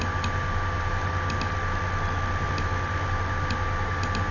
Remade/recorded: recorded